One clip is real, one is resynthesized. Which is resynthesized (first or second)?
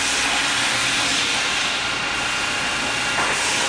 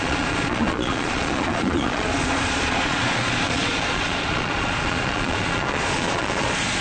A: second